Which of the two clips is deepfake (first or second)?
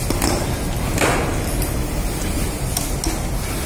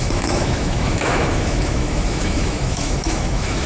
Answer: second